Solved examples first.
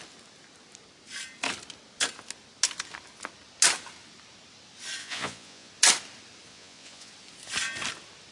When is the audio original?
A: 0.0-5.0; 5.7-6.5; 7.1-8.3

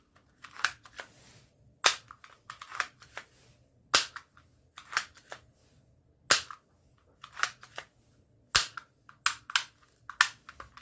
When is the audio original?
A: 0.0-10.8

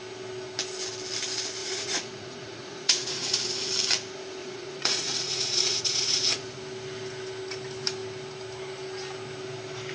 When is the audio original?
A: 0.0-1.6; 3.7-4.4; 6.4-9.9

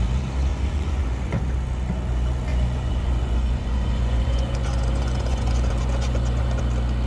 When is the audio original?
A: 0.0-0.5; 1.4-2.5; 6.6-7.1

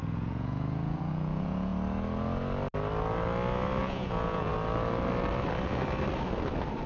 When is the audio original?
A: 1.7-3.8; 4.5-6.9

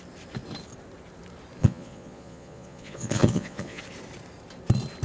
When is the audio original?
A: 0.0-1.6; 3.8-5.0

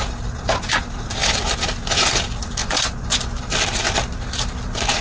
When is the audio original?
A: 0.0-2.6; 3.4-5.0